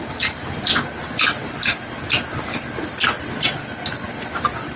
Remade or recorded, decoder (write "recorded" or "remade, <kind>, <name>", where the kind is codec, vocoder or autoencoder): recorded